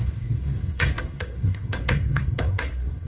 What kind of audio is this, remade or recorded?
remade